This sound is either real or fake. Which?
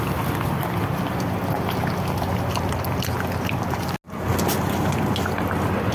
real